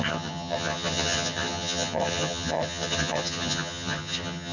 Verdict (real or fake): fake